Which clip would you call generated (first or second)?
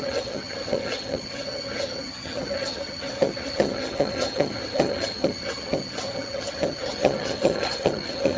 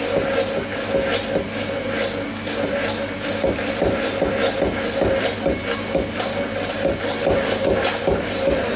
first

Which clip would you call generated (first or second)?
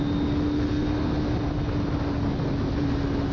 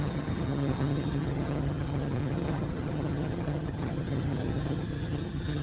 second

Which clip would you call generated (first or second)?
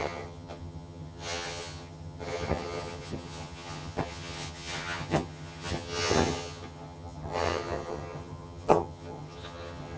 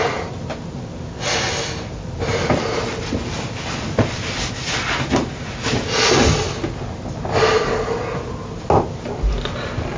first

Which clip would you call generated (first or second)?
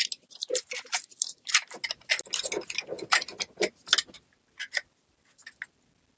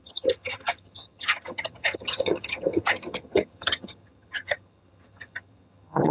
second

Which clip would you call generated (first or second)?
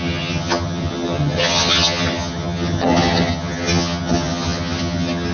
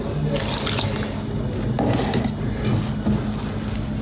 first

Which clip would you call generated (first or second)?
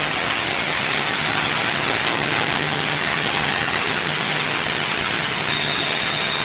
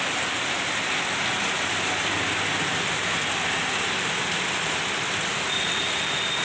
first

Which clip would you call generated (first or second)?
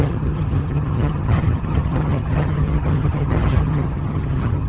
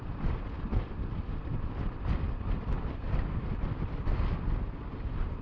first